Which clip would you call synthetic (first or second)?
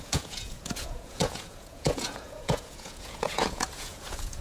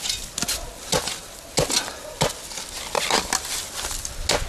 first